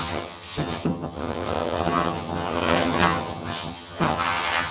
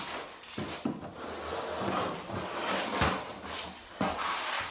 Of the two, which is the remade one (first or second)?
first